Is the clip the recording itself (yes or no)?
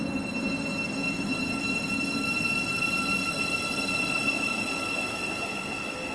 yes